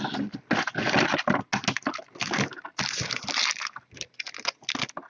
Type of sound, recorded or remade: recorded